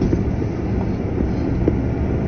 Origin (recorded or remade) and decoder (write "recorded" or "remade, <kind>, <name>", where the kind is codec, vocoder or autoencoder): recorded